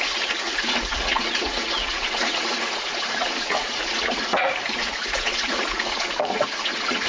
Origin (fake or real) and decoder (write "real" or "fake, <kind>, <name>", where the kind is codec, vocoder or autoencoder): fake, vocoder, Vocos